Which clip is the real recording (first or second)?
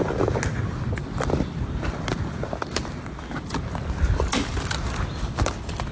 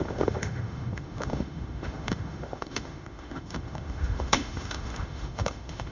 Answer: first